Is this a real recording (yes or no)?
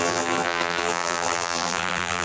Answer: no